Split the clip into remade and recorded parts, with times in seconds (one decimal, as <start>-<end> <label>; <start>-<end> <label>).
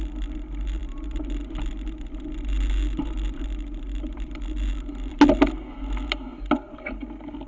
0.0-7.5 recorded